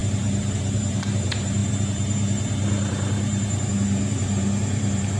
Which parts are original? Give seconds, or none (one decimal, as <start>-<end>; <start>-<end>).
none